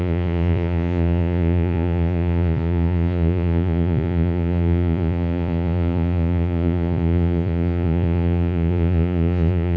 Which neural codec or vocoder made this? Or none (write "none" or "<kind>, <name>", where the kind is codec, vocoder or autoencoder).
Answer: vocoder, Vocos